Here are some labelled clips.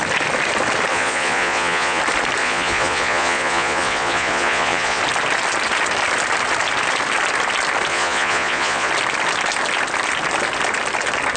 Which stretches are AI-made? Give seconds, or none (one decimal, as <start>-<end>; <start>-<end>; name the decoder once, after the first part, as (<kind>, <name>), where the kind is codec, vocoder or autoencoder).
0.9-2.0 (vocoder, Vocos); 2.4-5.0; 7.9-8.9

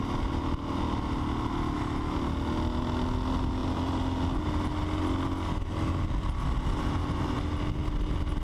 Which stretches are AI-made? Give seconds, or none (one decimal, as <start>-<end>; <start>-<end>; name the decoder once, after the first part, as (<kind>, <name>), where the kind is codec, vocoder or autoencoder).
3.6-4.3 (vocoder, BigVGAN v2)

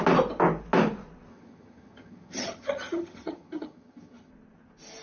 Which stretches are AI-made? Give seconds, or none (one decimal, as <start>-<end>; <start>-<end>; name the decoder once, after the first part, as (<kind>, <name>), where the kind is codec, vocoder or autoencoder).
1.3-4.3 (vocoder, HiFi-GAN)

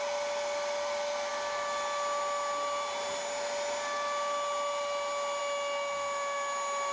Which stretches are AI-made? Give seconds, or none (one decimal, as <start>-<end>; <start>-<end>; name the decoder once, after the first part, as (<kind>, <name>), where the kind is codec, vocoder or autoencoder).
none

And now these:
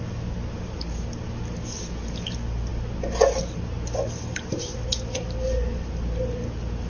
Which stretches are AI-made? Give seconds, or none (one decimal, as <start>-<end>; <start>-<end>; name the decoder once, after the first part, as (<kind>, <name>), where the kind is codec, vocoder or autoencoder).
none

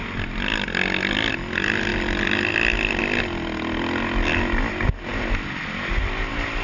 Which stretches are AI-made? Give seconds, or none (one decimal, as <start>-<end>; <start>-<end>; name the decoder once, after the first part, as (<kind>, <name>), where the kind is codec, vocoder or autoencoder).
none

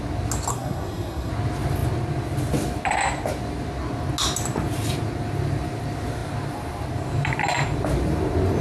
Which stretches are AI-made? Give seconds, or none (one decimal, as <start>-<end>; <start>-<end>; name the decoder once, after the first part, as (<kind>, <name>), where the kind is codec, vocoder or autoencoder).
0.5-1.3 (codec, SNAC)